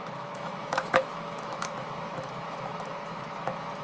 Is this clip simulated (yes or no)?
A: yes